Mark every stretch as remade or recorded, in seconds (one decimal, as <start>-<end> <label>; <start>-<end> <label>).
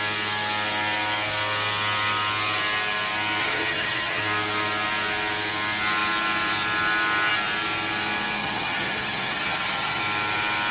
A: 0.0-3.4 recorded; 3.4-4.2 remade; 4.2-8.4 recorded; 8.4-10.0 remade; 10.0-10.7 recorded